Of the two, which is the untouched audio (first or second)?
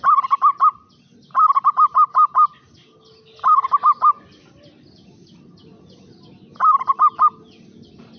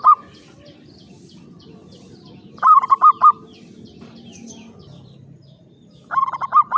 first